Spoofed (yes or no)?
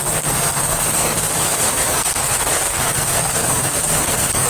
yes